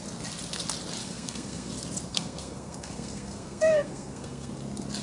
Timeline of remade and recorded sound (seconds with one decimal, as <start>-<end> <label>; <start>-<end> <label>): 0.0-1.0 recorded; 1.0-1.7 remade; 1.7-2.1 recorded; 2.1-4.5 remade; 4.5-5.0 recorded